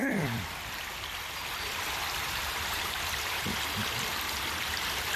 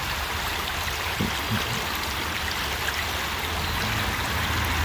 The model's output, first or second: first